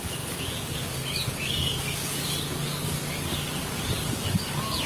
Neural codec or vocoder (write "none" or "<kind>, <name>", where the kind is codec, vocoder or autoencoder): codec, DAC